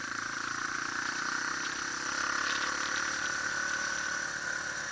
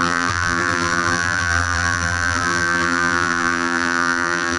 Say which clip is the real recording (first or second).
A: first